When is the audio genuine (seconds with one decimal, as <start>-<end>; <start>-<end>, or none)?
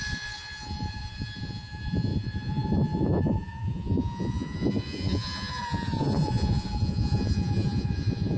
none